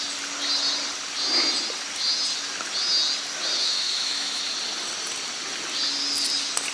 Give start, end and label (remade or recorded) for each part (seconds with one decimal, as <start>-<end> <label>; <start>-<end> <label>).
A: 0.0-3.6 recorded; 3.6-4.4 remade; 4.4-6.7 recorded